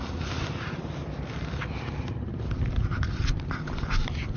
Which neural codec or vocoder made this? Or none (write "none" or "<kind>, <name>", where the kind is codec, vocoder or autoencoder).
none